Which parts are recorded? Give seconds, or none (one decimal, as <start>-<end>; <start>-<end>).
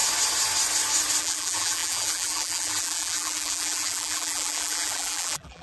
0.0-1.2